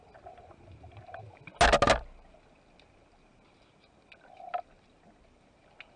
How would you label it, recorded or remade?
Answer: recorded